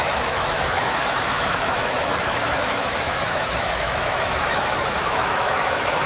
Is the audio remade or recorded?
remade